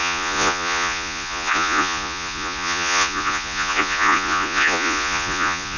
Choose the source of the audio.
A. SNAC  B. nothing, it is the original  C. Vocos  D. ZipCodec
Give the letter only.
C